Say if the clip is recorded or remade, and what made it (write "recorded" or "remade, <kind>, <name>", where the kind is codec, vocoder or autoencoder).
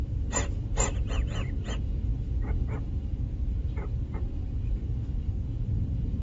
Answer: remade, vocoder, BigVGAN v2